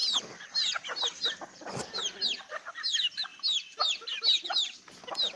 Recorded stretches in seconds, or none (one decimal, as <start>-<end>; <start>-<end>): 1.7-5.4